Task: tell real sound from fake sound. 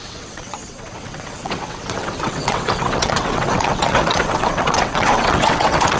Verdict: fake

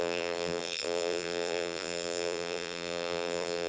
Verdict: fake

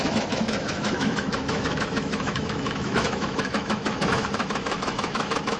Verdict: fake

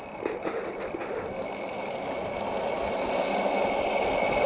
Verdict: real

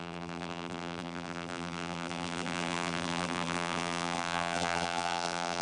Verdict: fake